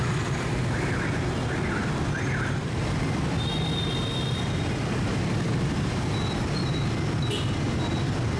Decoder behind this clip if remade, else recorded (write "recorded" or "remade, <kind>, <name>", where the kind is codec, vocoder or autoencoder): recorded